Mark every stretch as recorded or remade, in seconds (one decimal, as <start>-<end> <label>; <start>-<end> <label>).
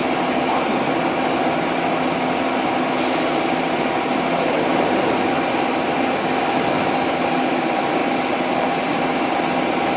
0.0-10.0 recorded